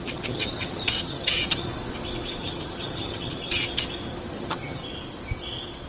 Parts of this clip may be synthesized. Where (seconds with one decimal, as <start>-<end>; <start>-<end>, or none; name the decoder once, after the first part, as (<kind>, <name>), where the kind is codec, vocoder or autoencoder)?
0.0-1.7 (vocoder, HiFi-GAN); 2.4-3.6; 4.3-4.8